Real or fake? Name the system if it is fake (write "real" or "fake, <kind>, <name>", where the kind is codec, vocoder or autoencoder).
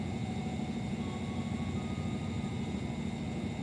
real